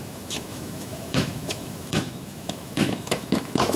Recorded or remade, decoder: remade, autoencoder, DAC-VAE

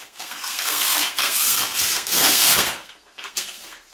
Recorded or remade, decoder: remade, codec, SNAC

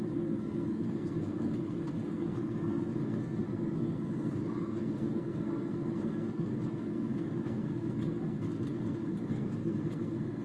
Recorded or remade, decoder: remade, codec, SNAC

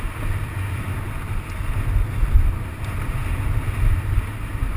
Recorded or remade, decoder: recorded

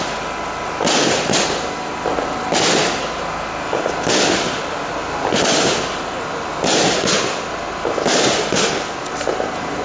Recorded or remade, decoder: recorded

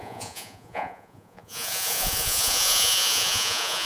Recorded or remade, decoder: remade, vocoder, Vocos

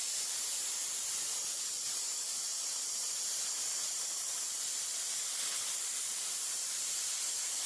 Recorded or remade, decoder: remade, vocoder, BigVGAN v2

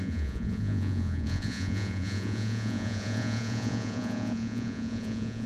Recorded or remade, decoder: remade, vocoder, Vocos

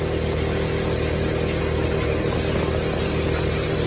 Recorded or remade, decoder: recorded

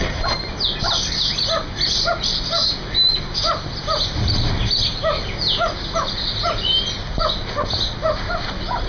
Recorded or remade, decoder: recorded